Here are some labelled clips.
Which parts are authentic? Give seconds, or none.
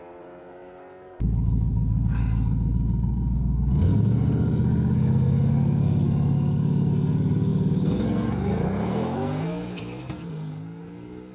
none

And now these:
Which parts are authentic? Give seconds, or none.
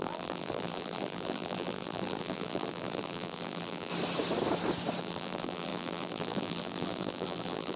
3.9-5.0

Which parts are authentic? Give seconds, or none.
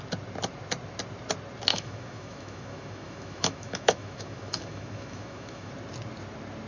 0.0-1.7; 5.7-6.7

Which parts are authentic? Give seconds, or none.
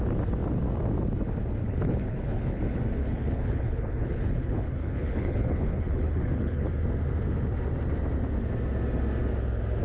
0.0-1.6; 2.6-3.0; 6.7-9.8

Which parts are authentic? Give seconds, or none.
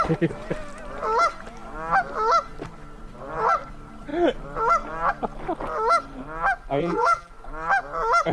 0.0-6.8; 7.3-8.3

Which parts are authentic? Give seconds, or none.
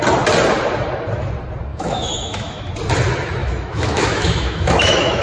0.0-1.7; 2.7-3.4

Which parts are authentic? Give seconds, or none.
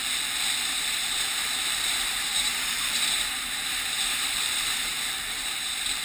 0.0-0.7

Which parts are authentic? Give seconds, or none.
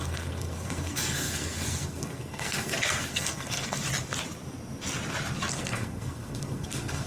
3.8-5.5